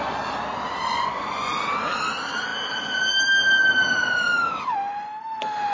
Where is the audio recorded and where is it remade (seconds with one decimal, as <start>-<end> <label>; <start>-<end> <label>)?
0.0-0.8 recorded; 0.8-1.5 remade; 1.5-5.7 recorded